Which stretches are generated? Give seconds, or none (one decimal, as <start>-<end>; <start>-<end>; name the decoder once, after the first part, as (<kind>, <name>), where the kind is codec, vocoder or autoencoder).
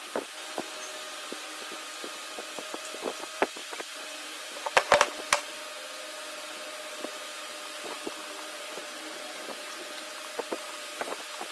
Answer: 3.6-5.2 (vocoder, BigVGAN v2); 8.8-9.6